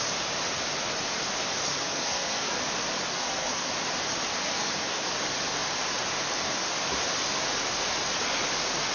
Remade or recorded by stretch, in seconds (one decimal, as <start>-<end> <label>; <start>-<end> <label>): 0.0-1.7 recorded; 1.7-2.5 remade; 2.5-3.1 recorded; 3.1-3.7 remade; 3.7-4.3 recorded; 4.3-5.1 remade; 5.1-8.9 recorded